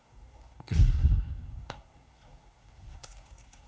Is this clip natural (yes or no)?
no